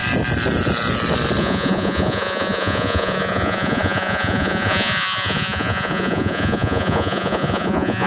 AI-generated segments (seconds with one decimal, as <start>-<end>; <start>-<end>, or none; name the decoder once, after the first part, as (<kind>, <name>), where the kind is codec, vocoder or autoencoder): 1.4-8.1 (vocoder, Vocos)

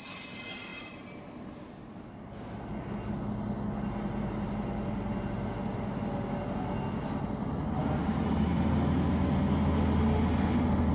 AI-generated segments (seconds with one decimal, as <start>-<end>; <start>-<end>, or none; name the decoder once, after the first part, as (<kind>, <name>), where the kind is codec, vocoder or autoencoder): none